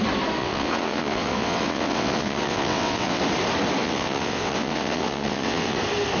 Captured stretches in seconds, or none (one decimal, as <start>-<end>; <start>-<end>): 0.0-0.4; 3.2-3.8; 5.8-6.2